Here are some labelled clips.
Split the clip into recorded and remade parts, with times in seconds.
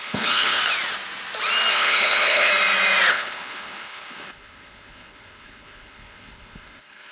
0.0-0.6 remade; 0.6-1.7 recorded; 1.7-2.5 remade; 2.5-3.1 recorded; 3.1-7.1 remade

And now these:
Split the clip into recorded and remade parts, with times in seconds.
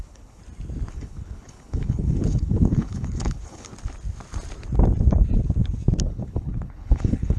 0.0-0.4 remade; 0.4-0.9 recorded; 0.9-3.7 remade; 3.7-6.0 recorded; 6.0-7.4 remade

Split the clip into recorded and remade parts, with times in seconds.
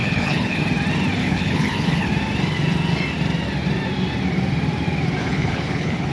0.0-0.6 remade; 0.6-1.2 recorded; 1.2-2.1 remade; 2.1-5.2 recorded; 5.2-6.1 remade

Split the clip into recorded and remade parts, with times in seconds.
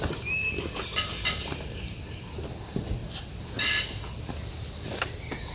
0.0-5.5 recorded